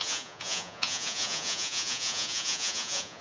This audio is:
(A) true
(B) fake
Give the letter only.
B